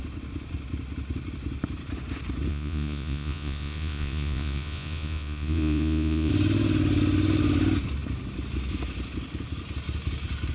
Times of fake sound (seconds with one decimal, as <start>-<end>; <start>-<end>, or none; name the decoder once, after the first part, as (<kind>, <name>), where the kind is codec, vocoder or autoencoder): 2.5-6.3 (vocoder, Vocos)